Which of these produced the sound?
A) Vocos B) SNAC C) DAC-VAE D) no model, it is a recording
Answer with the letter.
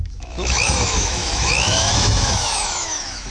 C